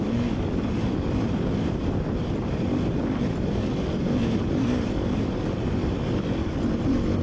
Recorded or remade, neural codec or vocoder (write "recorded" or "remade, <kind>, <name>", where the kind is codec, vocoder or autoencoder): recorded